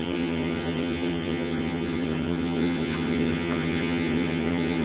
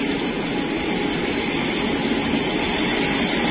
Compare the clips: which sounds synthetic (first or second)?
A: first